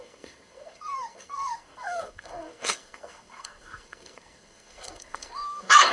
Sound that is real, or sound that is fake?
fake